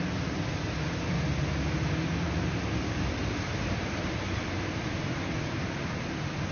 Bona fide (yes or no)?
yes